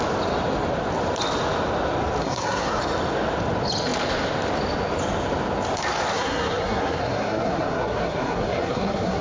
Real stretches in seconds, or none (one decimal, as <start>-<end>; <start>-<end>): 0.0-2.2; 2.8-6.1